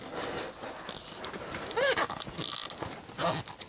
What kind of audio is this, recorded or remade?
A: recorded